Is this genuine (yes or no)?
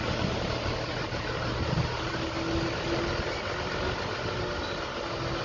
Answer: yes